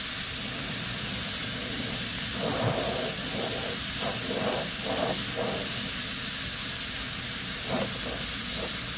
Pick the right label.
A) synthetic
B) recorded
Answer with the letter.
B